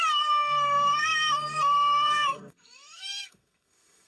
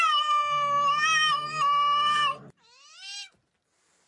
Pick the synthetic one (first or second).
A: first